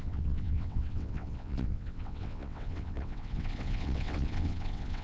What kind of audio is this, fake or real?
fake